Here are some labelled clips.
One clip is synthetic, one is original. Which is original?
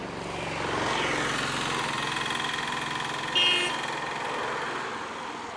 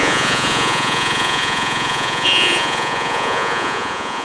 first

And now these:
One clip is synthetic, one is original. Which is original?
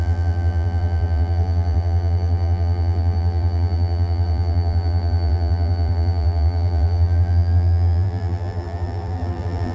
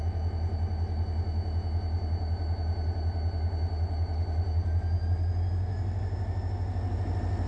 second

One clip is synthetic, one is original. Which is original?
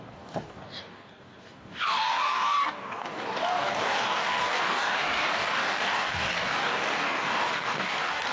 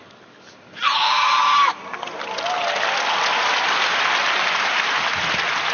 second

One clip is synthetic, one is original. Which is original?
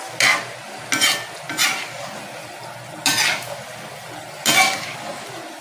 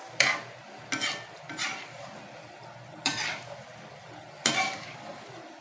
first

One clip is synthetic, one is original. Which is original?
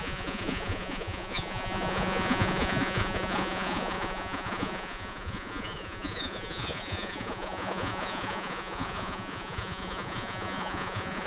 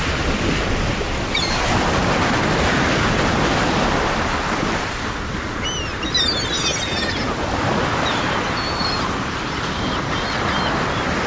second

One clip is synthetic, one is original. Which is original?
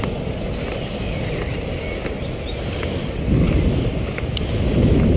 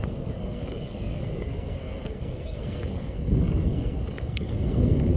first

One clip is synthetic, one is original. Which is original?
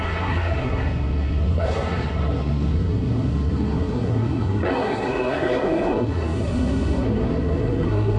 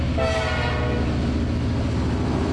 second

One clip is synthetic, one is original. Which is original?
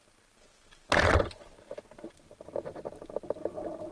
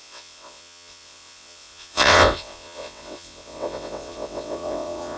first